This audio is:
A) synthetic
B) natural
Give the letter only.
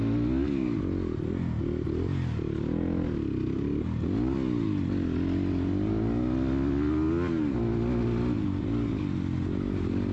B